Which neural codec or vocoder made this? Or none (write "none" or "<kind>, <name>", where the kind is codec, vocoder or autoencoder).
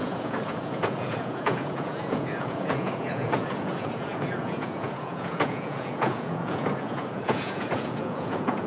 vocoder, Vocos